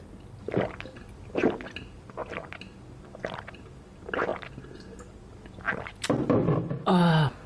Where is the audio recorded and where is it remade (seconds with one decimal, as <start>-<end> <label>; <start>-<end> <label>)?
0.0-7.5 recorded